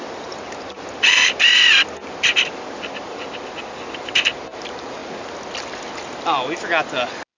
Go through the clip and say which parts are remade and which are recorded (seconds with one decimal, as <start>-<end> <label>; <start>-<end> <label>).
0.0-7.4 recorded